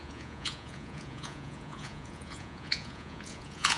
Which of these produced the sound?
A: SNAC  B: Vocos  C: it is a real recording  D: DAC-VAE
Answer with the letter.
B